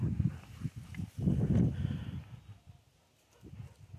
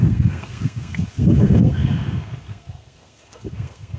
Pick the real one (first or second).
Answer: first